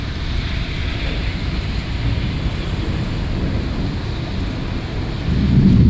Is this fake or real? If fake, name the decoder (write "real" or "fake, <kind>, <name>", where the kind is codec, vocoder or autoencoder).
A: real